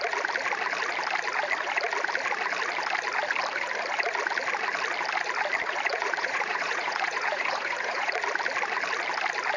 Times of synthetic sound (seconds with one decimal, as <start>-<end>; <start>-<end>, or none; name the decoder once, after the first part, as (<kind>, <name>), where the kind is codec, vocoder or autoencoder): 5.9-8.2 (vocoder, Vocos)